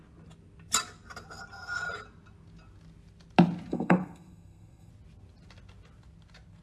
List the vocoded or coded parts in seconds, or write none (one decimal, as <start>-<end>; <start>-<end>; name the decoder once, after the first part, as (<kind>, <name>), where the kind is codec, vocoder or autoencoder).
3.7-4.9 (codec, SNAC)